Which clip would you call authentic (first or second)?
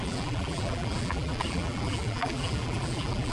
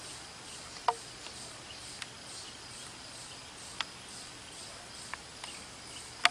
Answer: second